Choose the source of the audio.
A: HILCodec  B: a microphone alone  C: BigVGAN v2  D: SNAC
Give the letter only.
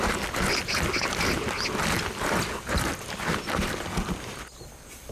B